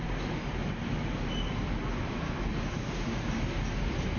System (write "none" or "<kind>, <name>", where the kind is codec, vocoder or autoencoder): none